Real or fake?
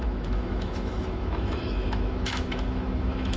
fake